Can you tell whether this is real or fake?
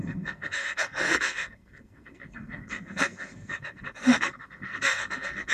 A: fake